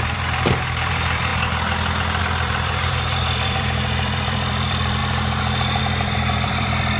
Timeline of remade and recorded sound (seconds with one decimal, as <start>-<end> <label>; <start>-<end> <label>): 0.0-1.3 remade; 1.3-2.2 recorded; 2.2-5.0 remade; 5.0-5.8 recorded; 5.8-7.0 remade